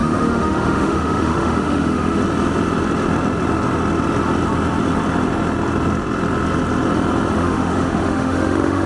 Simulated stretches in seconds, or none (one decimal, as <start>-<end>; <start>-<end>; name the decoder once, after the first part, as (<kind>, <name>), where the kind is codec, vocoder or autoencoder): 0.0-2.2 (autoencoder, DAC-VAE); 7.3-8.9